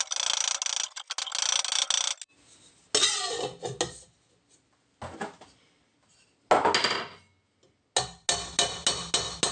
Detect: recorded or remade recorded